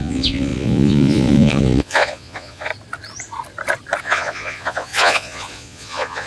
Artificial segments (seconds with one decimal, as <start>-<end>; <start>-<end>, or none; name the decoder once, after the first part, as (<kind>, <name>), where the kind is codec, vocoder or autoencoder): 0.0-2.7 (vocoder, Vocos); 4.0-6.3